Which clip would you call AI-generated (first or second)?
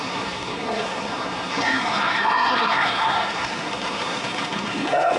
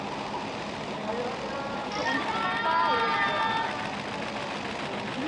first